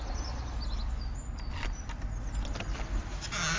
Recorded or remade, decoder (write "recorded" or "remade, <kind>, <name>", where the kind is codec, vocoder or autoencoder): recorded